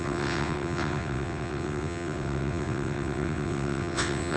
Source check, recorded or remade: remade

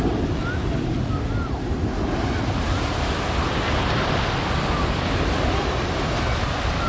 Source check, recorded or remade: recorded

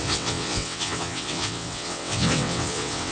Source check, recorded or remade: remade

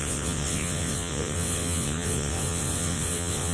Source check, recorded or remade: remade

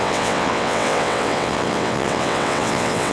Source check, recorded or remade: remade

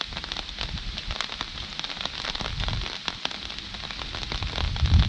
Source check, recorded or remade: recorded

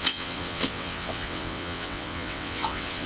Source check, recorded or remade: remade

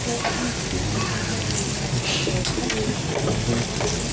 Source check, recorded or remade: recorded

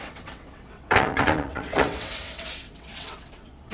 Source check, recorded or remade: remade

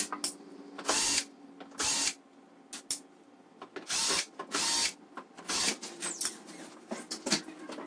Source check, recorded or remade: recorded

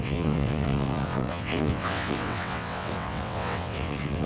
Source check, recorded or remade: remade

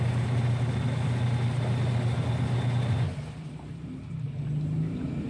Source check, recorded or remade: recorded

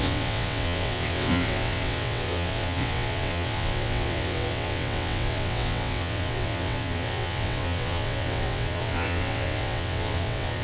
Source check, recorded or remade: remade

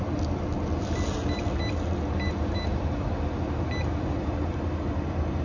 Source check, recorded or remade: recorded